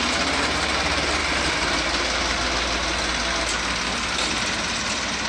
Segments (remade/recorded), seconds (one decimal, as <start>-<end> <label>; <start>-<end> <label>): 0.0-5.3 recorded

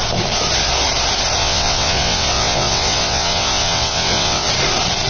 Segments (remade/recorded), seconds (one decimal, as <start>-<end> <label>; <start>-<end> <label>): 0.0-1.4 recorded; 1.4-4.5 remade; 4.5-5.1 recorded

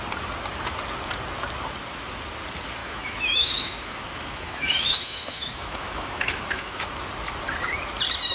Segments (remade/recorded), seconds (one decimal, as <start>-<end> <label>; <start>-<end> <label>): 0.0-2.8 recorded; 2.8-6.9 remade; 6.9-8.3 recorded

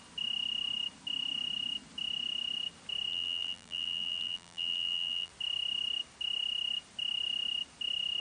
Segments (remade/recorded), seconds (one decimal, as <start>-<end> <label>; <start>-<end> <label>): 0.0-3.1 recorded; 3.1-5.3 remade; 5.3-8.2 recorded